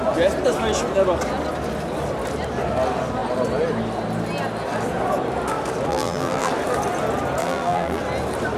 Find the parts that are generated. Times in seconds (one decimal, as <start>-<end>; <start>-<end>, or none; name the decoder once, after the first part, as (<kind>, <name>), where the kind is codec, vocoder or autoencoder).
5.9-6.5 (vocoder, BigVGAN v2); 7.4-8.0